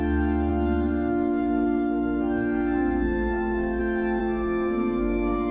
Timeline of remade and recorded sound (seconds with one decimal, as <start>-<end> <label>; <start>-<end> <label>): 0.0-0.5 recorded; 0.5-3.8 remade; 3.8-4.2 recorded; 4.2-5.5 remade